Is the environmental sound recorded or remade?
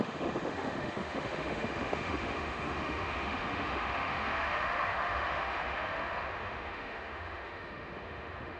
remade